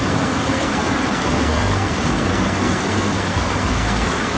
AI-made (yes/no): yes